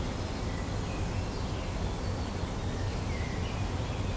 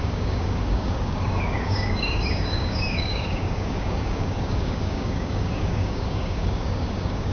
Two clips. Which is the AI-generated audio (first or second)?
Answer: second